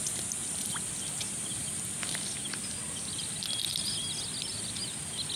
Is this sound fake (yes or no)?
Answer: no